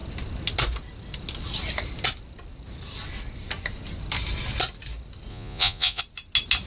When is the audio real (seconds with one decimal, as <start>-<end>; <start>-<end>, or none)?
0.0-5.3; 6.0-6.7